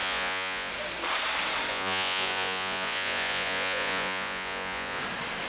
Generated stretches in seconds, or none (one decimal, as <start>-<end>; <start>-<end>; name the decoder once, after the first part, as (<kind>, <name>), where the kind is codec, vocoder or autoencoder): 0.0-0.7 (vocoder, Vocos); 1.7-5.0